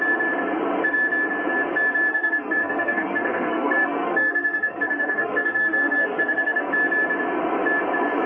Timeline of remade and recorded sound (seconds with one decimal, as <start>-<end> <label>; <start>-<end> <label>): 0.0-2.1 recorded; 2.1-6.7 remade; 6.7-8.3 recorded